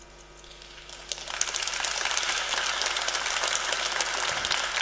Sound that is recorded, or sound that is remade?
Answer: recorded